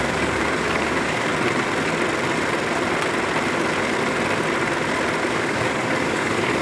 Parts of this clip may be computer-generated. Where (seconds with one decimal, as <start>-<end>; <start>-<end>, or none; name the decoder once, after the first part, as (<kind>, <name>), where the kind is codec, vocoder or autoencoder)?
0.0-1.3 (codec, DAC); 5.3-6.6